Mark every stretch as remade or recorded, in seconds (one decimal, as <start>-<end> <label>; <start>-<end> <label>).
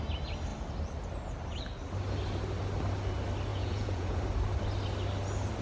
0.0-3.5 recorded; 3.5-4.2 remade; 4.2-5.6 recorded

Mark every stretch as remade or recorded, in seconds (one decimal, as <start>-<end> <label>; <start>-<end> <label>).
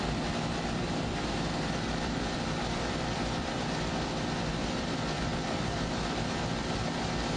0.0-7.4 remade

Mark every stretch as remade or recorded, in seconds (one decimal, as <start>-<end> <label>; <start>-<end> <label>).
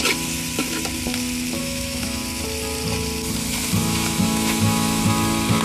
0.0-1.6 recorded; 1.6-2.2 remade; 2.2-3.8 recorded; 3.8-5.0 remade; 5.0-5.6 recorded